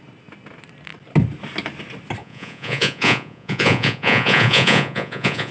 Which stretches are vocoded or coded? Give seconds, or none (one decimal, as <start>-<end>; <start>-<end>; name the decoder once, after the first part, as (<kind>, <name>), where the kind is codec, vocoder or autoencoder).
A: 2.2-5.5 (vocoder, Vocos)